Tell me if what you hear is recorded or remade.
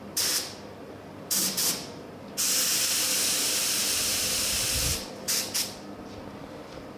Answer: remade